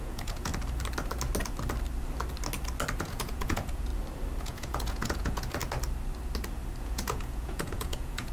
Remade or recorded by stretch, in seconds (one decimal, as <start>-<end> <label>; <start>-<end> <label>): 0.0-0.5 remade; 0.5-3.0 recorded; 3.0-3.9 remade; 3.9-4.4 recorded; 4.4-5.6 remade; 5.6-6.8 recorded; 6.8-8.3 remade